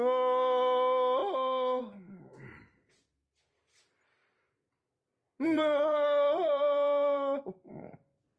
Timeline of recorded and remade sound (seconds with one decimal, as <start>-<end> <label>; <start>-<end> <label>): 0.0-4.2 recorded; 4.2-7.4 remade; 7.4-8.4 recorded